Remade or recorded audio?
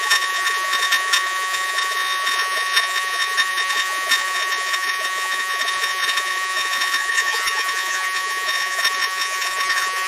remade